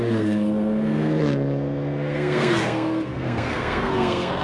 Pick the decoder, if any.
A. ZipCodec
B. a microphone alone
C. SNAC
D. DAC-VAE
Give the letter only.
C